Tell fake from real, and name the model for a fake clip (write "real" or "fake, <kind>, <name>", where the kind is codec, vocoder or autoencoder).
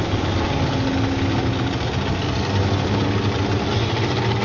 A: real